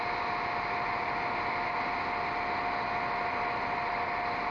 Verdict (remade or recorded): recorded